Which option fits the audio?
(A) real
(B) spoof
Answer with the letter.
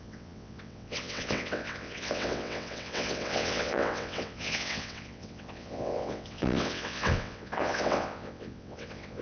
B